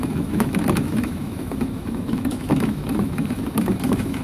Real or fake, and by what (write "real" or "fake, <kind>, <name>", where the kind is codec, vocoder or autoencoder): fake, autoencoder, DAC-VAE